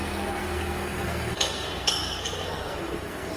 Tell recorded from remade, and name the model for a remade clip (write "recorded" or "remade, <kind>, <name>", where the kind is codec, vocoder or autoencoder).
remade, codec, SNAC